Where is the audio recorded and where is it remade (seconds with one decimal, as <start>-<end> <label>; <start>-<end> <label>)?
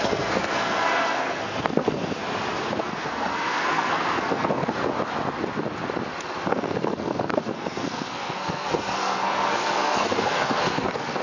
0.0-2.2 remade; 2.2-2.8 recorded; 2.8-4.8 remade; 4.8-6.5 recorded; 6.5-11.2 remade